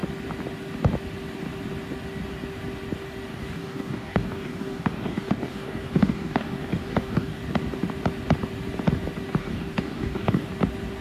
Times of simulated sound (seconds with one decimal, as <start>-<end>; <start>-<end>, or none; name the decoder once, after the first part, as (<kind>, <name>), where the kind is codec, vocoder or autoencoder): 3.3-7.4 (codec, DAC); 9.4-10.5